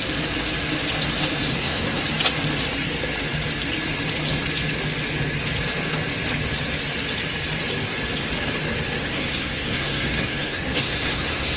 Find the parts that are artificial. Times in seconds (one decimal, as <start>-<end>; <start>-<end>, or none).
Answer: 1.5-2.0; 9.1-11.6